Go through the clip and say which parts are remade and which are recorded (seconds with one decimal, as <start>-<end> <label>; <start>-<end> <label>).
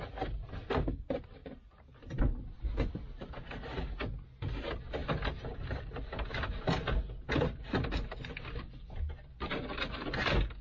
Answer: 0.0-10.6 recorded